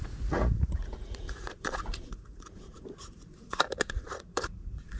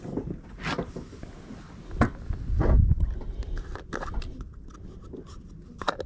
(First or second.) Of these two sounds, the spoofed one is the first